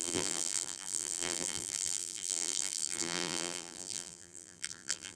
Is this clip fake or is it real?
fake